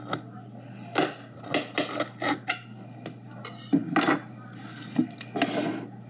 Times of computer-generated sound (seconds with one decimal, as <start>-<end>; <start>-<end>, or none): none